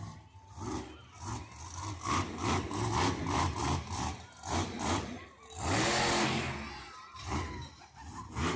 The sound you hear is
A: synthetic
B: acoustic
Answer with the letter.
B